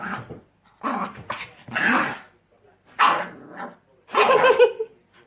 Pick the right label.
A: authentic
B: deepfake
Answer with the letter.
A